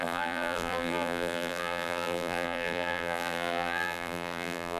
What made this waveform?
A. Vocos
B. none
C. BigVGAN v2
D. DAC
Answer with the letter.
C